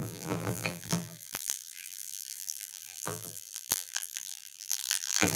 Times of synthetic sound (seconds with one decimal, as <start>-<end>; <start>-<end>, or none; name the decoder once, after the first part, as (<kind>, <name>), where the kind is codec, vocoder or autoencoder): 0.0-5.4 (vocoder, BigVGAN v2)